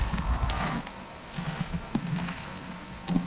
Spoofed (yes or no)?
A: yes